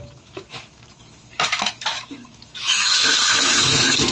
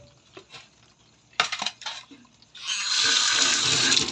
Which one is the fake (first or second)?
first